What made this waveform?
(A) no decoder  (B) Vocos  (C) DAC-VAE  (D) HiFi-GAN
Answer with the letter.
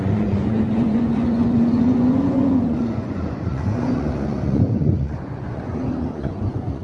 B